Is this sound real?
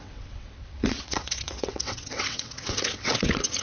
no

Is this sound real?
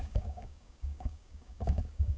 no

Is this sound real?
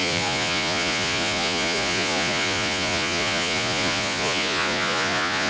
no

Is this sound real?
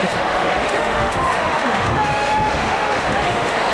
no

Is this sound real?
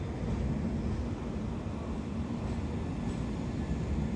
yes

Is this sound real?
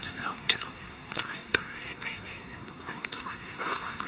no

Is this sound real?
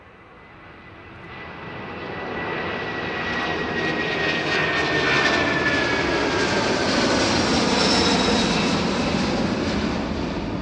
yes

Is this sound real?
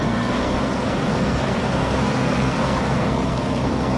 no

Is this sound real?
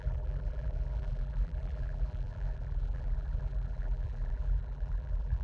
no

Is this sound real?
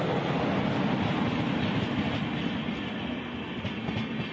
yes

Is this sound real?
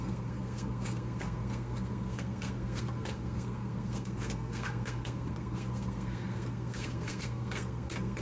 no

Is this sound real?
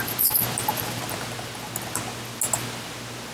yes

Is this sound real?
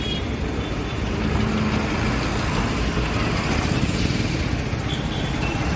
yes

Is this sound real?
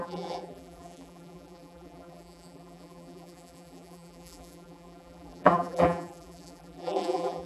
no